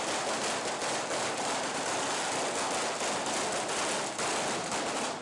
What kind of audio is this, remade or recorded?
recorded